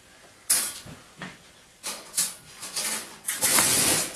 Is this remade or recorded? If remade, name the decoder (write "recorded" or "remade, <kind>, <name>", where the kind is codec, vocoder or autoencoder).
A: remade, vocoder, Vocos